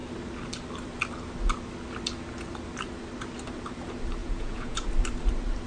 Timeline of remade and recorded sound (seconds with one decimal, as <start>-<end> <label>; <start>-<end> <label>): 0.0-4.2 recorded; 4.2-4.9 remade; 4.9-5.7 recorded